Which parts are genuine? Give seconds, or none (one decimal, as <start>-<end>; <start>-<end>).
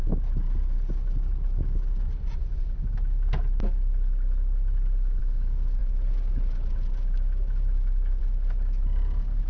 0.0-9.5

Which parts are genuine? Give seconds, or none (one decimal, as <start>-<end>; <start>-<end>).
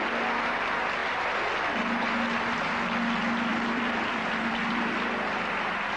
0.0-3.5; 4.9-6.0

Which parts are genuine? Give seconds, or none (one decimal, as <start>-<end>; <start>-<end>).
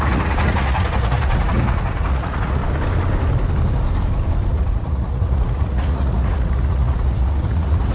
2.6-4.5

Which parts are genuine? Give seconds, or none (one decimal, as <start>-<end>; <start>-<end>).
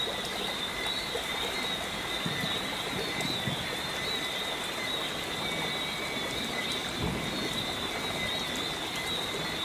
1.9-6.8; 7.5-9.6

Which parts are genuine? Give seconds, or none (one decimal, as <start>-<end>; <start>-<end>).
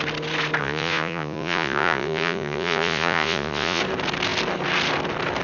0.0-0.6; 3.8-5.4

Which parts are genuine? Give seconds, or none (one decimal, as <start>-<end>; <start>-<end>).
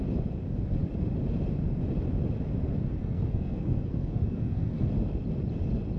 0.0-3.0; 4.9-6.0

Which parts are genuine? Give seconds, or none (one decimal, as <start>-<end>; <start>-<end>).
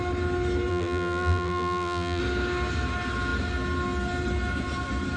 0.0-0.7; 2.2-5.2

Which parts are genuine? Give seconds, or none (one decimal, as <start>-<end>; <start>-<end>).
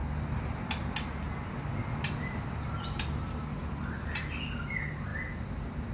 0.0-5.9